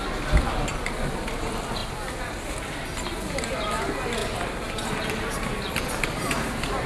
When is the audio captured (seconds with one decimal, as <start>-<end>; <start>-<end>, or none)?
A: 0.0-6.9